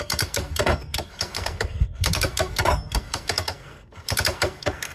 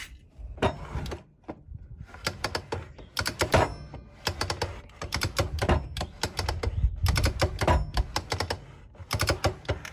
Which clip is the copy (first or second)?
first